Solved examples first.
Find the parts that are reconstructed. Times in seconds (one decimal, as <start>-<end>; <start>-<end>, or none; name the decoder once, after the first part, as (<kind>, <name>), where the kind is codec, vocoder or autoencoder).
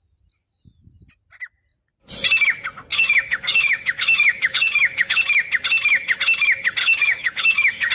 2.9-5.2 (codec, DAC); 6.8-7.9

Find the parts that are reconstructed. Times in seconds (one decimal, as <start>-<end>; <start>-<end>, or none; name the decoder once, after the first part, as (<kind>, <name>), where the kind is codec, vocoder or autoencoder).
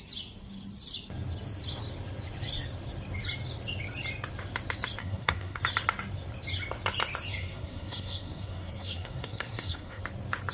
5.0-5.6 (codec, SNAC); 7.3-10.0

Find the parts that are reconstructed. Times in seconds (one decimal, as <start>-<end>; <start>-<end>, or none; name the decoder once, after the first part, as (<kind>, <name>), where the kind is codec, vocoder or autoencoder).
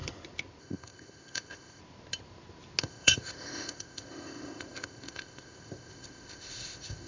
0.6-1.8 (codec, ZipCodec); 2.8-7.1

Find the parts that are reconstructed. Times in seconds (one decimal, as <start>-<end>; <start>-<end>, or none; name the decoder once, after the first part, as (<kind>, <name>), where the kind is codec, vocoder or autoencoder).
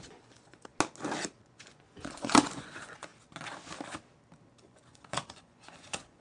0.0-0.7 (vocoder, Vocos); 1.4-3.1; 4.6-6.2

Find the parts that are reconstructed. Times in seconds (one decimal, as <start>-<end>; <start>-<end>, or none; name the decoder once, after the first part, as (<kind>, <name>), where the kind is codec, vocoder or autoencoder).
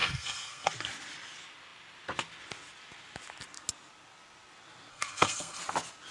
0.0-0.7 (codec, SNAC); 4.9-5.6